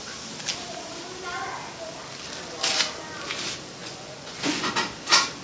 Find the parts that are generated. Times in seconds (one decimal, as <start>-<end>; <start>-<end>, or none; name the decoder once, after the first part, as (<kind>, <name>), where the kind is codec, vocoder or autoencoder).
3.8-4.7 (vocoder, Vocos)

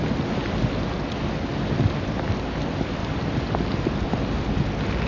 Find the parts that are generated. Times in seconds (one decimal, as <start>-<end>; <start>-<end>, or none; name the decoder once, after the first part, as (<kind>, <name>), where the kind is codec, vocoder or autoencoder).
none

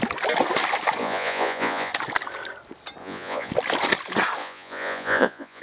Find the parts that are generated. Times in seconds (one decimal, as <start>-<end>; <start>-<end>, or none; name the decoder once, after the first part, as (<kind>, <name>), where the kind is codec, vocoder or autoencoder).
1.0-1.9 (vocoder, Vocos); 3.0-3.5; 4.4-5.6

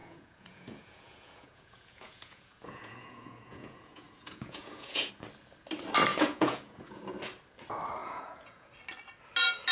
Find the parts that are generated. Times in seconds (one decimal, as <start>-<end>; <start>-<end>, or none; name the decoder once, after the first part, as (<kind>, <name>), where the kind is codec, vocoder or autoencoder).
0.0-5.1 (vocoder, Vocos); 6.1-7.0; 8.0-8.7

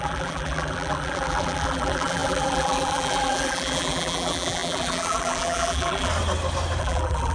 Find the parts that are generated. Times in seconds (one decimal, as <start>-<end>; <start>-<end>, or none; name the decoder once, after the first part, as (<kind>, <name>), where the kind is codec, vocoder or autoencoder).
0.0-6.1 (vocoder, BigVGAN v2); 6.8-7.3

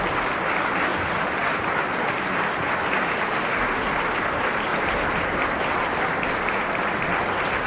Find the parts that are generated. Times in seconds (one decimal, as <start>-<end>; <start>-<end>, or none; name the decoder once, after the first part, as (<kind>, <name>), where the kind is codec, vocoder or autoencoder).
4.7-7.2 (vocoder, BigVGAN v2)

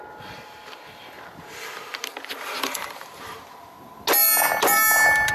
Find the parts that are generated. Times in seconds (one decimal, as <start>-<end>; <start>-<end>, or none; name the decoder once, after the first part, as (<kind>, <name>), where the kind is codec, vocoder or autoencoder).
2.1-3.4 (vocoder, BigVGAN v2)

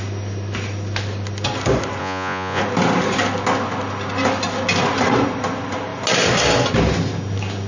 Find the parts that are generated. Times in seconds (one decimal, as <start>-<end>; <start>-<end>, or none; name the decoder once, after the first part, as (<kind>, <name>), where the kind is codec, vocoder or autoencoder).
2.0-2.6 (vocoder, Vocos)